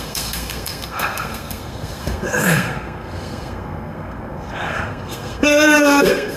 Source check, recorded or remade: remade